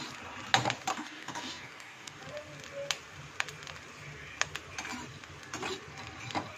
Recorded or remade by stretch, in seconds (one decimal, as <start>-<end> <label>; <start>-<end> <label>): 0.0-0.9 recorded; 0.9-2.2 remade; 2.2-6.6 recorded